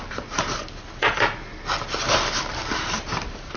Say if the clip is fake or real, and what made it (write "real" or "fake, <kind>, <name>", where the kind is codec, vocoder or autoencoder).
real